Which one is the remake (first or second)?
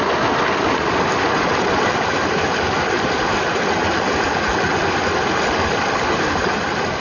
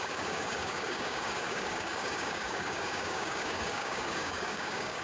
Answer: second